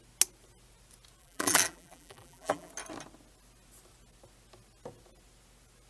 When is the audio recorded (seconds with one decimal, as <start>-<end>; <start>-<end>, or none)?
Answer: 0.0-1.2; 2.7-5.9